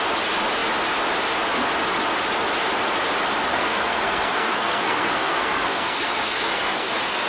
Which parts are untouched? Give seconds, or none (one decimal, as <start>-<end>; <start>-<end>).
0.0-3.5